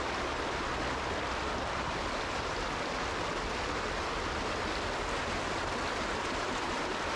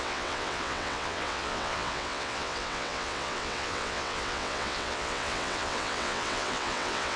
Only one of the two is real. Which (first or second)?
first